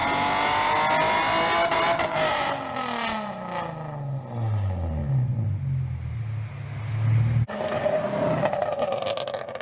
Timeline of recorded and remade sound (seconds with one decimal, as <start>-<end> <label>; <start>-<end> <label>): 0.0-9.6 recorded